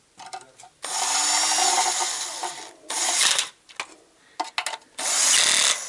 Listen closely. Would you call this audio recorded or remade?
recorded